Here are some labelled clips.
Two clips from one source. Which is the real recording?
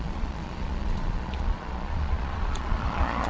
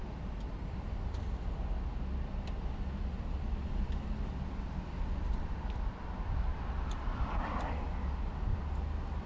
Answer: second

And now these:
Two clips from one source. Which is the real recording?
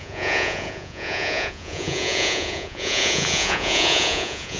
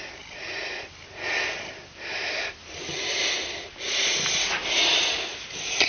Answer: second